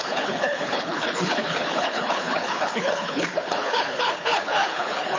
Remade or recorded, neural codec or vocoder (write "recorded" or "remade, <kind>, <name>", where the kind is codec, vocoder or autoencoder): remade, codec, HILCodec